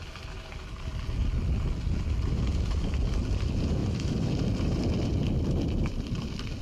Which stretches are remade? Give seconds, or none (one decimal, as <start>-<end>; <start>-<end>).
3.8-6.6